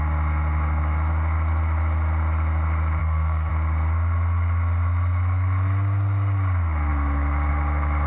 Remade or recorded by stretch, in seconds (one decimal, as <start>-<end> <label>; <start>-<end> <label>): 0.0-3.0 recorded; 3.0-3.5 remade; 3.5-8.1 recorded